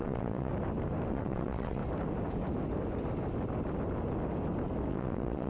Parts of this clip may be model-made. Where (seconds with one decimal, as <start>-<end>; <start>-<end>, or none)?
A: 0.0-0.5; 1.1-1.8; 4.9-5.5